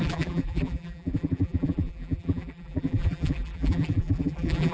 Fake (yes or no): yes